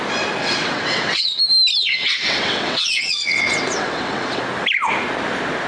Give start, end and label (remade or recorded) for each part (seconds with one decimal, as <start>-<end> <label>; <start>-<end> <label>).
0.0-0.4 recorded; 0.4-1.4 remade; 1.4-1.8 recorded; 1.8-4.4 remade; 4.4-5.7 recorded